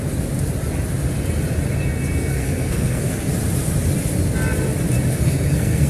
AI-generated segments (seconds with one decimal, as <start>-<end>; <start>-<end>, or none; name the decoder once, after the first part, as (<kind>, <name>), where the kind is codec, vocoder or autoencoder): 2.3-3.3 (codec, SNAC); 5.1-5.9